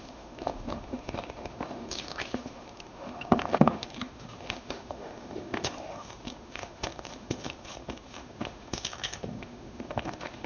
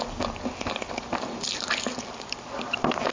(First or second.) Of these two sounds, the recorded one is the second